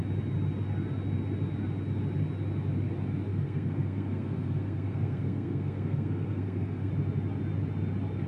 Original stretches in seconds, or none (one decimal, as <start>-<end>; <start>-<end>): 0.0-3.3; 6.9-8.3